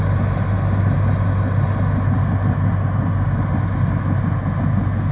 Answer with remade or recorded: recorded